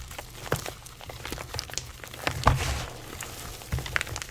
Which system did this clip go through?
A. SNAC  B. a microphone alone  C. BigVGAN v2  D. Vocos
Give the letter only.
B